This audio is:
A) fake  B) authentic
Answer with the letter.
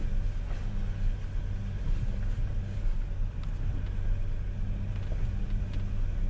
B